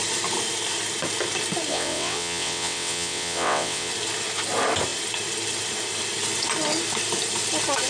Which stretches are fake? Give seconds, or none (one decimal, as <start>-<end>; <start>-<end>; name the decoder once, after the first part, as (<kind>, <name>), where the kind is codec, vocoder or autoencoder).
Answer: 1.7-3.9 (vocoder, WaveNeXt)